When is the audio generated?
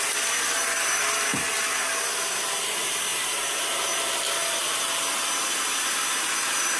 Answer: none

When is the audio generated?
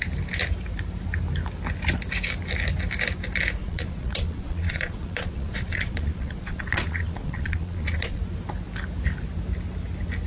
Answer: 3.6-8.2